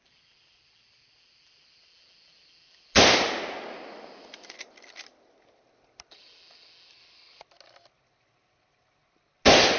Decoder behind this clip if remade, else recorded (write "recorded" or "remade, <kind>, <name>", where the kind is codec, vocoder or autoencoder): recorded